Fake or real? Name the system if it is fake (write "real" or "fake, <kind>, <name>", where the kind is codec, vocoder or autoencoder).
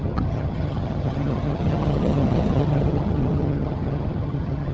fake, vocoder, HiFi-GAN